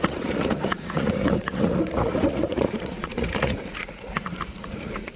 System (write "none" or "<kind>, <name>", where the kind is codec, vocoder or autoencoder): vocoder, Vocos